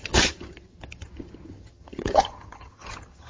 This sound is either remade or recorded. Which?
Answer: remade